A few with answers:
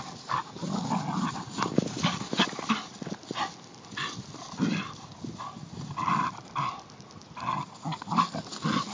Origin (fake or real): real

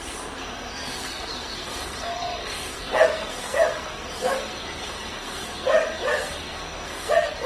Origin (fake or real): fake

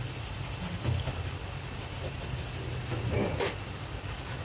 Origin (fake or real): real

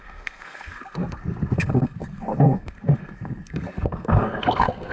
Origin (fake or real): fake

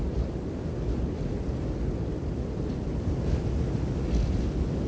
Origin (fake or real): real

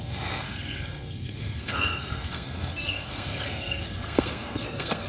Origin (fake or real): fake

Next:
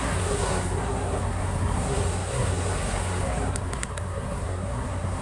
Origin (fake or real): fake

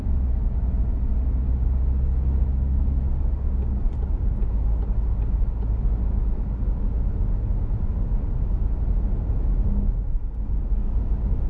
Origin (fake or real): real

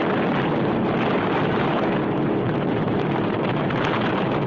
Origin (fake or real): real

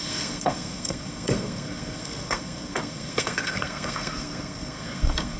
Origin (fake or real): fake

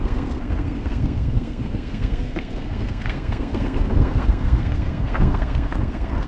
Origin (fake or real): fake